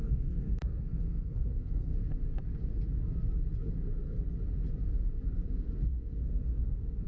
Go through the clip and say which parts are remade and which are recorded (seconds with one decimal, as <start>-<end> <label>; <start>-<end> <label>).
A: 0.0-1.9 remade; 1.9-6.2 recorded; 6.2-7.1 remade